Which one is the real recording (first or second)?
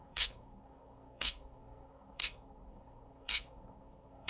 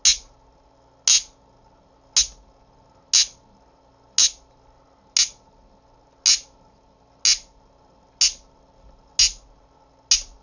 second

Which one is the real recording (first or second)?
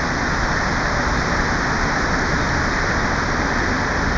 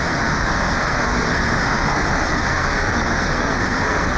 first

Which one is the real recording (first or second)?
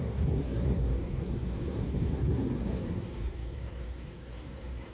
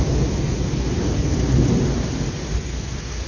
second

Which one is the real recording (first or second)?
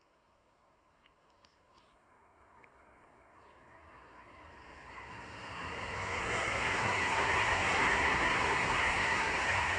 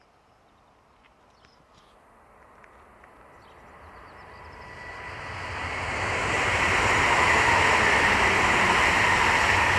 second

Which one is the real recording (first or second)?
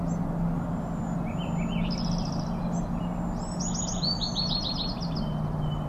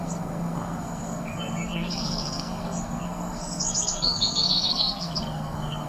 first